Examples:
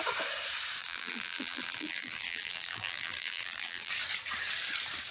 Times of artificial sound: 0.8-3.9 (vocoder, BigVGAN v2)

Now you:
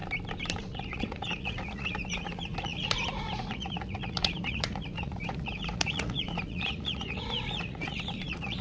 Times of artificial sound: 0.6-8.6 (vocoder, Vocos)

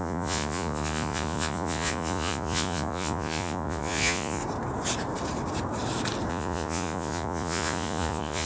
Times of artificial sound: 0.0-4.4 (vocoder, Vocos); 6.3-8.5

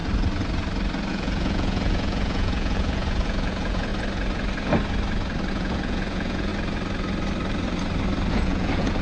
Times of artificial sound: 1.1-3.9 (vocoder, Vocos); 5.5-6.5; 8.3-9.0

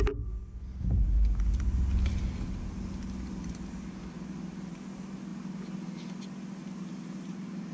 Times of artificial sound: none

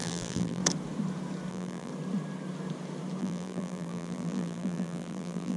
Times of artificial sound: 0.0-0.6 (vocoder, BigVGAN v2); 1.5-1.9; 3.2-5.6

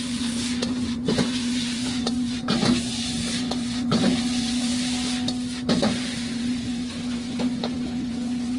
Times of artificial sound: 0.0-4.7 (vocoder, Vocos); 5.7-8.6

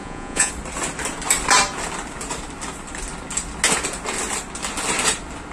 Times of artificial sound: 0.0-0.5 (vocoder, Vocos)